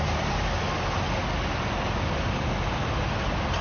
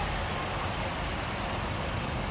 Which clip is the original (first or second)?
first